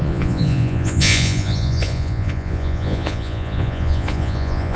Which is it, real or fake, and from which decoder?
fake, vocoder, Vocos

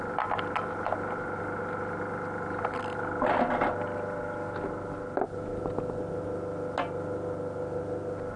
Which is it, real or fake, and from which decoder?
real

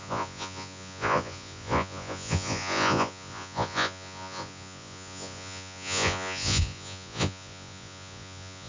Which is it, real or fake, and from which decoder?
fake, vocoder, Vocos